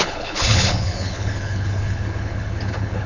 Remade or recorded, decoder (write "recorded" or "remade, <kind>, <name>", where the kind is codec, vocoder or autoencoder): remade, codec, HILCodec